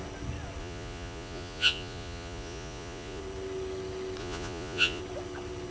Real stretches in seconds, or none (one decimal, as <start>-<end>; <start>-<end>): 0.0-0.6; 3.2-4.2; 5.0-5.7